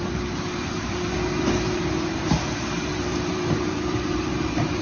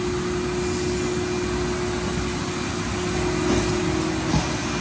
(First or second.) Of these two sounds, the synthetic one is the first